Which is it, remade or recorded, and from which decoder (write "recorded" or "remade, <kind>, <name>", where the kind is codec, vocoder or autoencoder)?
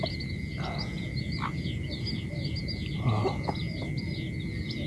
recorded